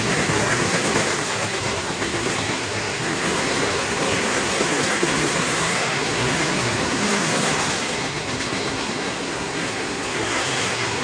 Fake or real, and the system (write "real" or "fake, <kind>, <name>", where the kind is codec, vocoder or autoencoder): fake, codec, SNAC